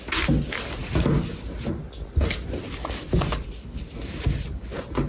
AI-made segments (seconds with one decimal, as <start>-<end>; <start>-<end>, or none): none